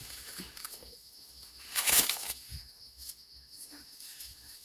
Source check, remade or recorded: remade